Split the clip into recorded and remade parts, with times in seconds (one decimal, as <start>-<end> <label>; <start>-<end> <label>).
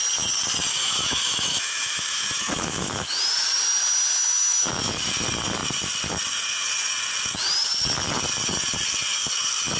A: 0.0-0.7 recorded; 0.7-3.2 remade; 3.2-4.2 recorded; 4.2-5.1 remade; 5.1-9.8 recorded